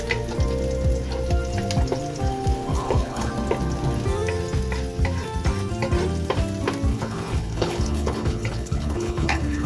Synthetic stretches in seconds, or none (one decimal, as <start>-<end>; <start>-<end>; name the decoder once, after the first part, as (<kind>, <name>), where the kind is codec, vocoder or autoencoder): 2.7-3.3 (codec, HILCodec); 6.9-9.7